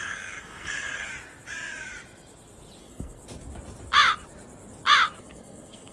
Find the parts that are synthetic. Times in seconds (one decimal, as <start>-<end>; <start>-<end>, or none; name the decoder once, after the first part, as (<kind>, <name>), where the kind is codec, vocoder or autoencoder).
0.0-1.1 (codec, SNAC); 2.8-3.2; 5.2-5.9

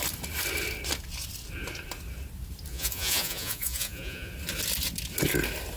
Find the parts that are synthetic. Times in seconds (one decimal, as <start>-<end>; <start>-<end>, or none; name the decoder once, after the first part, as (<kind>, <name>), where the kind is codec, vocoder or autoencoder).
2.7-4.3 (vocoder, Vocos)

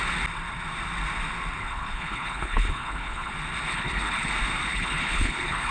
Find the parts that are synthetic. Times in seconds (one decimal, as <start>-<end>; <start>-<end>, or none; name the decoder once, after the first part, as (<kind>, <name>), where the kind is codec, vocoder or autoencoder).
1.6-3.3 (codec, HILCodec); 3.7-4.3; 4.7-5.7

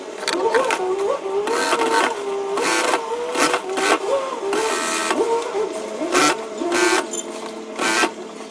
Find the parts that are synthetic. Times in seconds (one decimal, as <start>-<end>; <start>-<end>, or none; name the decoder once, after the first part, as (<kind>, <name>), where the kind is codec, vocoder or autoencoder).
none

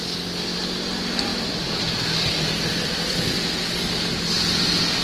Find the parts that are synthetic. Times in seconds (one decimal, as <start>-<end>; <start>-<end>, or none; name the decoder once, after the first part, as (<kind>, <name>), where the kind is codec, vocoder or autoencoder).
1.3-4.3 (vocoder, BigVGAN v2)

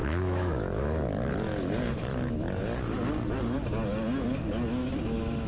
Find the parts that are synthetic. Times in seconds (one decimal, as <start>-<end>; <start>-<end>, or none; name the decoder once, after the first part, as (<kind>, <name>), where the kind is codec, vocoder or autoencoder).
0.0-0.8 (autoencoder, DAC-VAE); 4.8-5.5